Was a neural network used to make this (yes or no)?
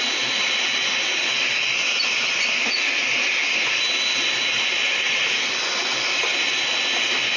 no